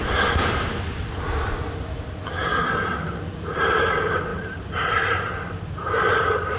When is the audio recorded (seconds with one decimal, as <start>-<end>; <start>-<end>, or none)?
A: 0.0-6.6